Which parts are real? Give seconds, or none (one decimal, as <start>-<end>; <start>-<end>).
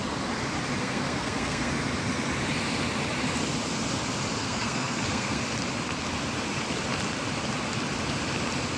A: 0.0-0.8; 1.7-4.4; 5.4-8.8